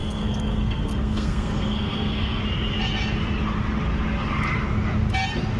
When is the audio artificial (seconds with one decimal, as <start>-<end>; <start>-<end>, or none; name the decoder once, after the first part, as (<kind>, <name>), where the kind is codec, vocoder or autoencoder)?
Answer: 0.0-2.4 (codec, SNAC)